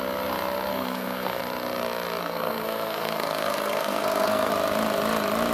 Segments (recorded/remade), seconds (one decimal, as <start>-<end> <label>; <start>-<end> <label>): 0.0-0.7 recorded; 0.7-1.4 remade; 1.4-2.2 recorded; 2.2-4.5 remade; 4.5-5.5 recorded